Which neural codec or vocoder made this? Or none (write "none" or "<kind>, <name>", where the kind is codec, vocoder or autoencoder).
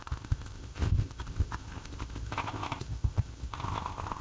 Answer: codec, ZipCodec